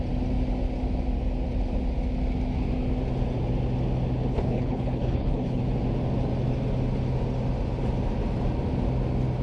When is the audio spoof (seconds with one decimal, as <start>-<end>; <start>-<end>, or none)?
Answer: 4.3-5.6